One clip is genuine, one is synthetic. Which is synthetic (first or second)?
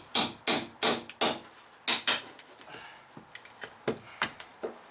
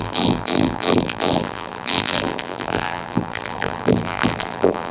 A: second